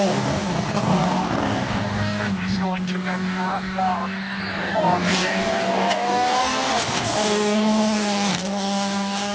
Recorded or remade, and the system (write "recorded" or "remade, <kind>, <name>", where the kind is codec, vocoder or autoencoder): remade, codec, DAC